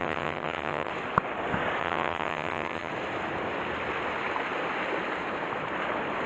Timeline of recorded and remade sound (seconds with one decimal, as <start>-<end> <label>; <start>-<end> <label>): 0.0-0.9 remade; 0.9-1.8 recorded; 1.8-2.9 remade; 2.9-6.3 recorded